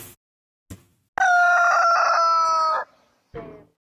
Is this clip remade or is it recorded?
recorded